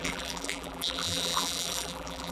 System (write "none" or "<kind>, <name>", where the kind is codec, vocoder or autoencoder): vocoder, BigVGAN v2